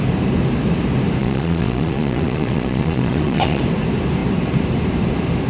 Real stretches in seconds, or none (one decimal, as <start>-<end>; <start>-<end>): 0.0-1.2; 3.6-5.5